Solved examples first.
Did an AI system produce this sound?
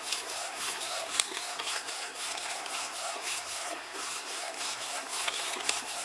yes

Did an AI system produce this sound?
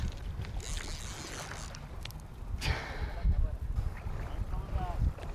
no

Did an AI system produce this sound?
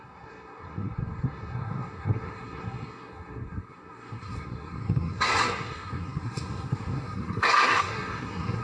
yes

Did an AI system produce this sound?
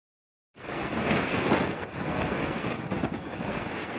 yes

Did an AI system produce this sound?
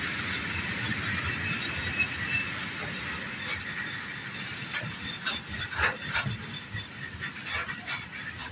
no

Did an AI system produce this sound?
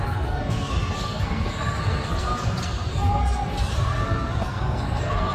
yes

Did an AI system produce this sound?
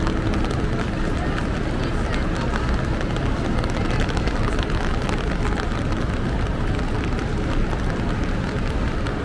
no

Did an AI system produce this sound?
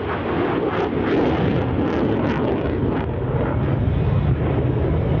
no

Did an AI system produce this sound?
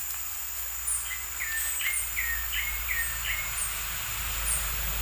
no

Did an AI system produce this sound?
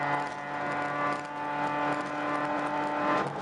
no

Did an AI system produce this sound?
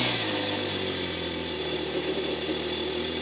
no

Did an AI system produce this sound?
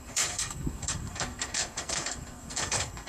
yes